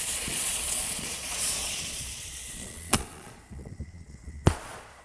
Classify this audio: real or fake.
fake